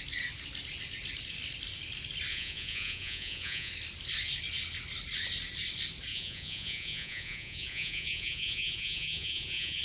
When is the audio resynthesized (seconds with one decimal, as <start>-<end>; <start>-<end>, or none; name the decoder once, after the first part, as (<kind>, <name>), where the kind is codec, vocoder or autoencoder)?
2.3-3.7 (vocoder, Vocos); 6.1-9.8